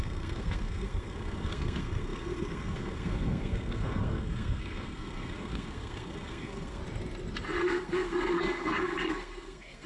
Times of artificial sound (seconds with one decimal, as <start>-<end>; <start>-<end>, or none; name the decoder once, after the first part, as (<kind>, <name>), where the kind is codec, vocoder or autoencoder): 0.0-6.8 (codec, SNAC); 7.6-9.9